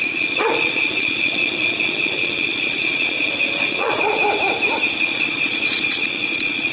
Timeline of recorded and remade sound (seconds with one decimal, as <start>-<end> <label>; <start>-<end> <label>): 0.0-4.2 remade; 4.2-5.0 recorded; 5.0-6.7 remade